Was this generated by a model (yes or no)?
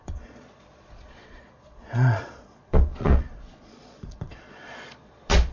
yes